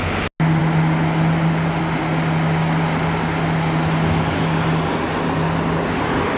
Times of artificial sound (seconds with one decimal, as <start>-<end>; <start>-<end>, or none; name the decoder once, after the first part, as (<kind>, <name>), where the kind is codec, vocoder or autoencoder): none